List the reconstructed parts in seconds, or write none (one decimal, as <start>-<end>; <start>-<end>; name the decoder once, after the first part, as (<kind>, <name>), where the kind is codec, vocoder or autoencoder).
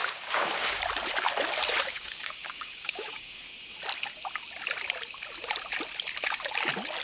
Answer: 0.0-0.8 (codec, DAC); 1.8-3.4